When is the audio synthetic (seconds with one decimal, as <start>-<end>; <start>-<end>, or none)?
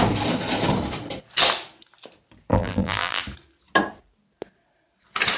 2.5-3.2